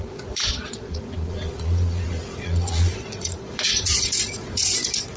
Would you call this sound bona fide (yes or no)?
no